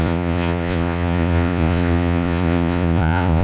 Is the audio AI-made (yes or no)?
yes